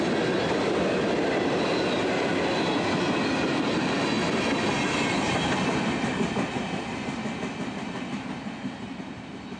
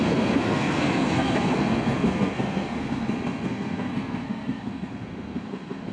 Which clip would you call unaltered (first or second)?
first